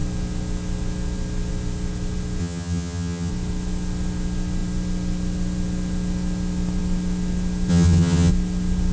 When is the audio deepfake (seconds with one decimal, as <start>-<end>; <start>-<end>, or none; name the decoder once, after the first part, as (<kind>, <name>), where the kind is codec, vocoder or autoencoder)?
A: 2.4-3.3 (vocoder, HiFi-GAN); 7.7-8.3